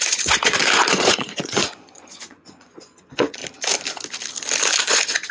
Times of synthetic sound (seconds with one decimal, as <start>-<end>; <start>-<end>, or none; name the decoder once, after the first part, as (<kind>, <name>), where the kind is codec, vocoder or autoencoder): 0.0-3.4 (vocoder, Vocos); 4.8-5.3